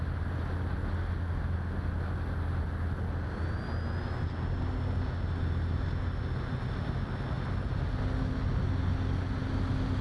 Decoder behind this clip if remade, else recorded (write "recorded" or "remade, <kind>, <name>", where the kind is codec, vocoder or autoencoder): recorded